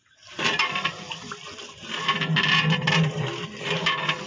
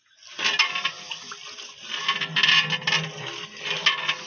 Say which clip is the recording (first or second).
second